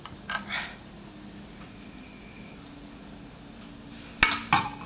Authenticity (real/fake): real